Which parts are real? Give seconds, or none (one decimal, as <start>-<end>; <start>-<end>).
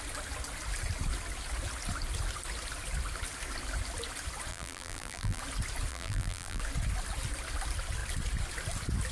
0.0-4.5; 5.4-5.9; 6.6-9.1